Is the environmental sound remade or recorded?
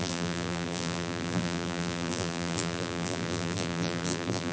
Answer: remade